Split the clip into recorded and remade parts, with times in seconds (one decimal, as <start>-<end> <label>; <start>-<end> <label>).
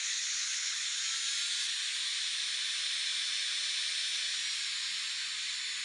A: 0.0-1.0 remade; 1.0-5.8 recorded